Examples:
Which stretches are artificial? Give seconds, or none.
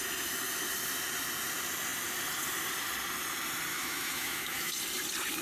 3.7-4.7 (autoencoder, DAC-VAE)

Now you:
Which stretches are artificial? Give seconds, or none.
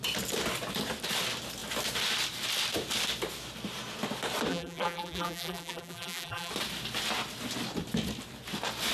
4.5-6.5 (vocoder, BigVGAN v2)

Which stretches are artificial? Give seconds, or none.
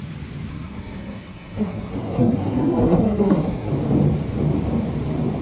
0.5-3.7 (codec, SNAC)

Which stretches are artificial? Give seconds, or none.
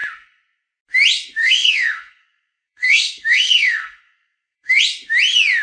1.4-4.8 (codec, SNAC)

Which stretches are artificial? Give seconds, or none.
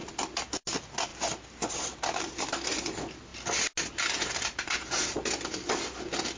none